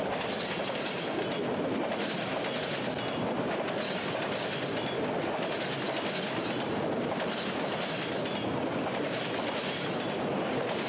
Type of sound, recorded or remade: recorded